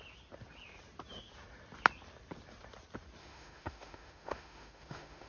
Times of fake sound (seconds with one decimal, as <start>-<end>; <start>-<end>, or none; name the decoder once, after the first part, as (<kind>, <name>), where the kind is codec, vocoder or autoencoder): 3.2-5.3 (autoencoder, DAC-VAE)